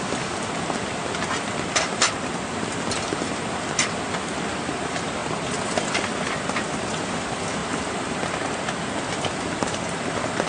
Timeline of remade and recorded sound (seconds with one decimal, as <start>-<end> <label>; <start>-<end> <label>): 0.0-5.2 remade; 5.2-6.3 recorded; 6.3-7.6 remade; 7.6-9.1 recorded; 9.1-10.5 remade